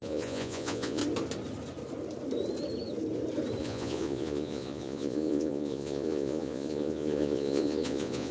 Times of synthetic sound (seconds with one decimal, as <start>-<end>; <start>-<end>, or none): 0.0-1.0; 3.6-8.3